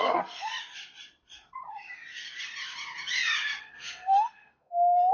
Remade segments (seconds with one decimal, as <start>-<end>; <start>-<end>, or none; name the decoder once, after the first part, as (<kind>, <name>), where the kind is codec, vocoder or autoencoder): 0.0-0.5 (codec, SNAC); 3.6-5.1